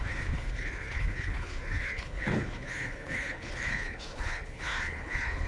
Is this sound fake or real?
fake